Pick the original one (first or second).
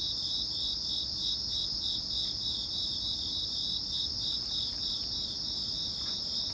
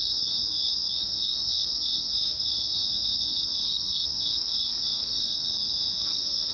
first